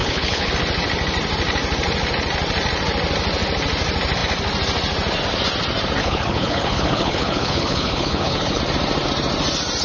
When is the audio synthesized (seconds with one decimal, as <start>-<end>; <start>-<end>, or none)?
0.0-0.5; 6.0-8.6

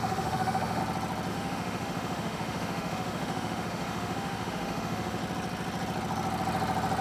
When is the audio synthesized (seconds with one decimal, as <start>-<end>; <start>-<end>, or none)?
0.0-0.8; 1.3-5.2

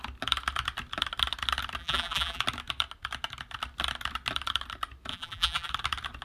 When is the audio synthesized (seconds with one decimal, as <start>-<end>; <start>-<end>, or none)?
1.8-2.4; 5.1-5.7

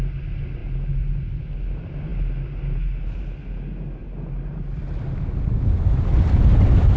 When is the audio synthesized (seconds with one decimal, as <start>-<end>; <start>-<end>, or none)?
none

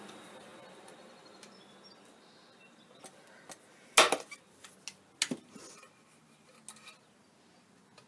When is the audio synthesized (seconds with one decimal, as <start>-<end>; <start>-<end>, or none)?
none

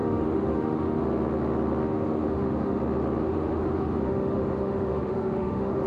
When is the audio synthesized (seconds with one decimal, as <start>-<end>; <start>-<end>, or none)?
0.0-1.0; 1.8-2.8; 3.2-5.9